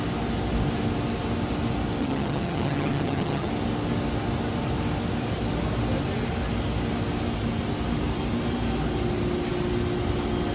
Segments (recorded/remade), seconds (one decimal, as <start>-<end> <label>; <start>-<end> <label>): 0.0-2.0 recorded; 2.0-3.5 remade; 3.5-10.5 recorded